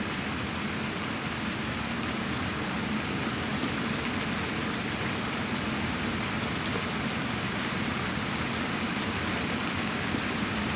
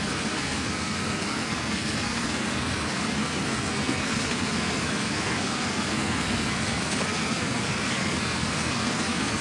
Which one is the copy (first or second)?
second